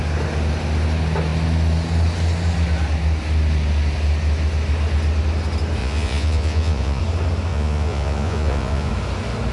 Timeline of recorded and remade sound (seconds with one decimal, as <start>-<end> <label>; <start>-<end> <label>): 0.0-5.8 recorded; 5.8-7.0 remade; 7.0-7.5 recorded; 7.5-8.9 remade; 8.9-9.5 recorded